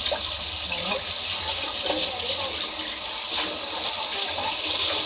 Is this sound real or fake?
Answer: real